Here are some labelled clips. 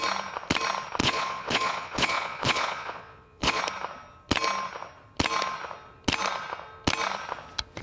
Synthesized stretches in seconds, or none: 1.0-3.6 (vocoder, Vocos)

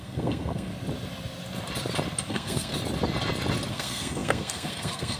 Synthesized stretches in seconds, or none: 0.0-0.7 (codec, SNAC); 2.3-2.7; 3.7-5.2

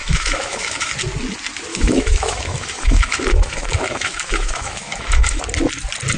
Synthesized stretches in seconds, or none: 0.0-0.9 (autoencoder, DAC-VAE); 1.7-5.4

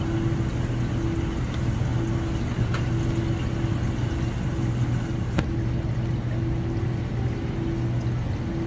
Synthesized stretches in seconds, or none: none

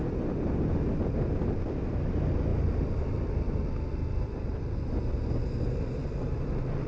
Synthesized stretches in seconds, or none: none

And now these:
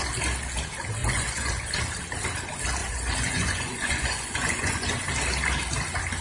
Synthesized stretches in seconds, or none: 1.0-1.7 (vocoder, Vocos); 2.8-4.9

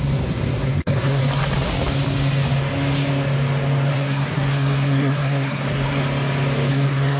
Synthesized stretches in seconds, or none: 0.0-1.2 (codec, SNAC); 3.9-6.0; 6.7-7.2

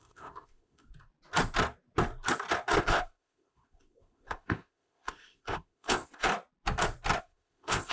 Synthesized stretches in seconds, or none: 0.0-0.9 (codec, ZipCodec); 2.8-6.3; 7.2-7.9